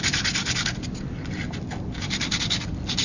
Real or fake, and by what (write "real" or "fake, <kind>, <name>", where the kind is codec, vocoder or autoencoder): real